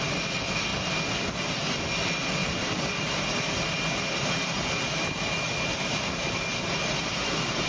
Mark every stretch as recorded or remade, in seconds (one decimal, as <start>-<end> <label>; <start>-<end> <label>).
0.0-7.7 recorded